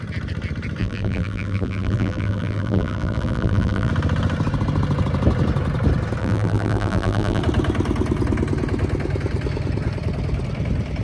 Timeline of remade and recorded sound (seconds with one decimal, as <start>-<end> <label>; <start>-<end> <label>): 0.0-0.8 recorded; 0.8-3.9 remade; 3.9-6.2 recorded; 6.2-7.4 remade; 7.4-11.0 recorded